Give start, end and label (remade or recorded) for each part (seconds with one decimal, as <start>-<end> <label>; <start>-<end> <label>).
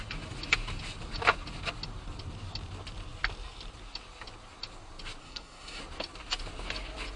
0.0-5.2 recorded; 5.2-5.8 remade; 5.8-7.2 recorded